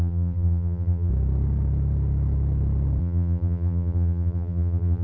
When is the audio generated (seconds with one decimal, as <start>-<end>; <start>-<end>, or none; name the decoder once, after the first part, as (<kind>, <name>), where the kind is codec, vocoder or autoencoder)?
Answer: 0.0-1.1 (vocoder, BigVGAN v2); 3.0-5.0